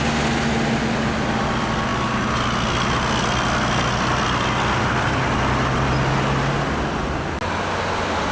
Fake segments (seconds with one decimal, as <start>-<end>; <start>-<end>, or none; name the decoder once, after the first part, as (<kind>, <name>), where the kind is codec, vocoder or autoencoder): none

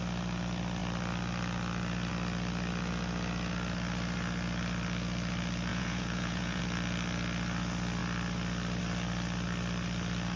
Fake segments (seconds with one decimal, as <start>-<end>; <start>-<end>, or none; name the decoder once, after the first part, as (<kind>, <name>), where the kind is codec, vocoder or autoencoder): 5.7-6.6 (vocoder, Vocos)

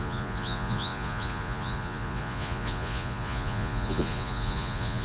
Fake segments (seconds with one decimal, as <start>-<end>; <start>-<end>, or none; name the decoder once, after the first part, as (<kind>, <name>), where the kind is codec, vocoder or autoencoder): 0.0-5.0 (vocoder, Vocos)

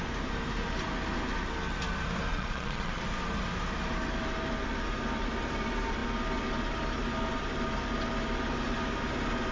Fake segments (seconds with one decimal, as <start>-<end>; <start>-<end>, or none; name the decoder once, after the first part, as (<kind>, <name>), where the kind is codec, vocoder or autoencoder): 2.3-3.0 (vocoder, Vocos)

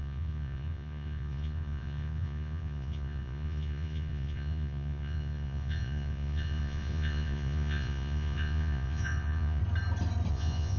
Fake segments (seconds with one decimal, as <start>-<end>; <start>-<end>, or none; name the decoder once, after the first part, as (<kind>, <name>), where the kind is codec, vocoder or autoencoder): 0.0-9.6 (vocoder, Vocos); 10.3-10.8

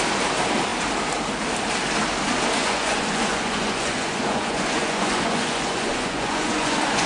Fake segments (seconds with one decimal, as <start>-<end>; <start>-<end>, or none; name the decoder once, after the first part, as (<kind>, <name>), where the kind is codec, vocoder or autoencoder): 2.6-7.1 (vocoder, Vocos)